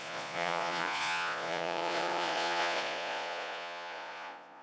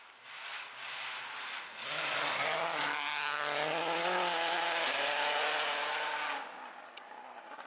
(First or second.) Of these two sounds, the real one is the second